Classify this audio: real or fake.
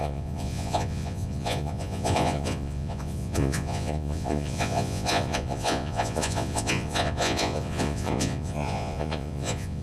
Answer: fake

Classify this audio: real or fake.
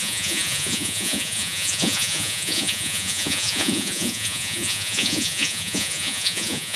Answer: fake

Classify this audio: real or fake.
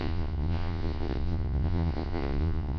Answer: fake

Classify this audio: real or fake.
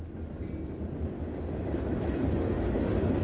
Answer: real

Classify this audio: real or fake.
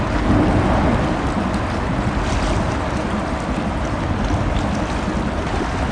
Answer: real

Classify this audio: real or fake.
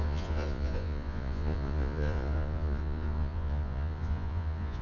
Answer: fake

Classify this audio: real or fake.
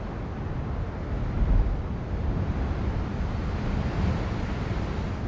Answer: real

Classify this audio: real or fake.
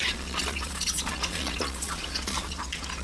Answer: fake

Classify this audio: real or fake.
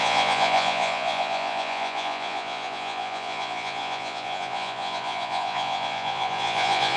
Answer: fake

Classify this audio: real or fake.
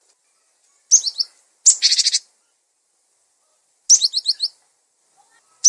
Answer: real